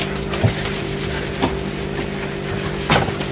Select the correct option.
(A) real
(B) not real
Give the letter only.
A